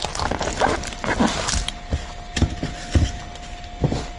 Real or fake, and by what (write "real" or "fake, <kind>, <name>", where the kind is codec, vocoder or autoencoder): real